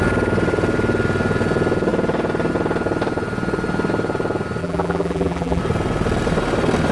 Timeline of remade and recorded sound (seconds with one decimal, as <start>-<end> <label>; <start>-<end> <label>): 0.0-4.6 recorded; 4.6-5.6 remade; 5.6-6.9 recorded